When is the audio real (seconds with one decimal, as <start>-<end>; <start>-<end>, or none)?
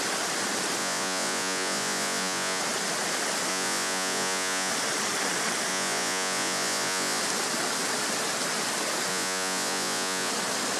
0.0-0.8; 2.6-3.5; 4.7-5.7; 7.2-9.1; 10.3-10.8